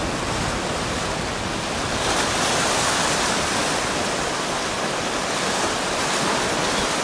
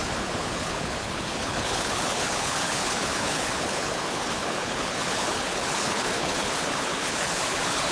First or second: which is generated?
second